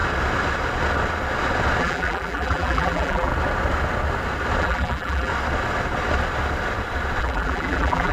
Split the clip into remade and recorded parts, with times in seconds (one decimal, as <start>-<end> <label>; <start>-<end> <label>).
0.0-1.8 recorded; 1.8-3.3 remade; 3.3-4.6 recorded; 4.6-5.3 remade; 5.3-7.2 recorded; 7.2-8.1 remade